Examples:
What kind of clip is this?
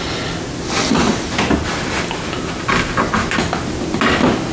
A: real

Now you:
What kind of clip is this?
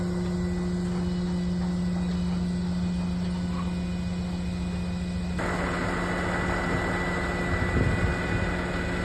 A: real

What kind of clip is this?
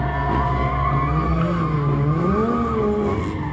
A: real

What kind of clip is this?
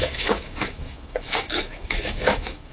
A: fake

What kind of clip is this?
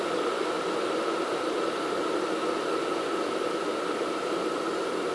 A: real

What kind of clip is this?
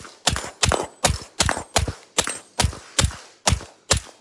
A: real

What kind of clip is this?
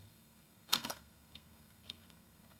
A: fake